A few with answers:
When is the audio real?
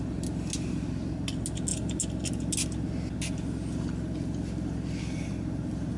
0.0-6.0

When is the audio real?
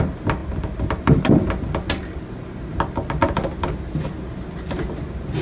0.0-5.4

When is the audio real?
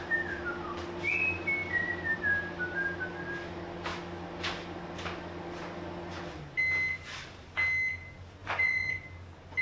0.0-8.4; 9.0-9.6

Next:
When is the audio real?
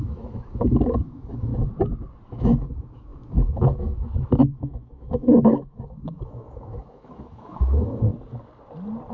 1.5-2.3; 8.1-9.1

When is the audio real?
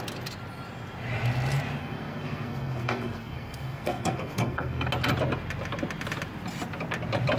0.0-1.8; 4.9-7.4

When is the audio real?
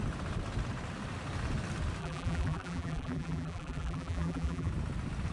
0.0-2.0; 4.7-5.3